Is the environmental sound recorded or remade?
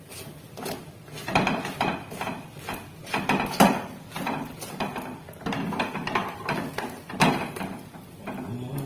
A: recorded